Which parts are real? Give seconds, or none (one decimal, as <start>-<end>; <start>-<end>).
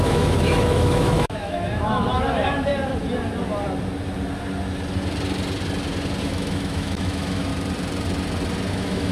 2.7-6.2; 7.5-8.7